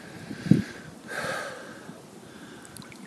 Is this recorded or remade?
recorded